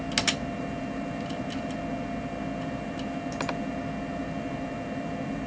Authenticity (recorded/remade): recorded